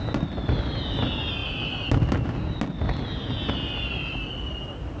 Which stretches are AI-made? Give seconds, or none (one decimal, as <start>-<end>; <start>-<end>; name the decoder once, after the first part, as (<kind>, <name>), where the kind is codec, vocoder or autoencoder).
none